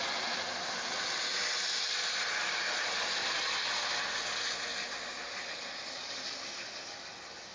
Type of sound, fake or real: real